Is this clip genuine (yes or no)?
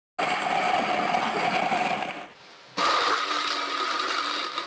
yes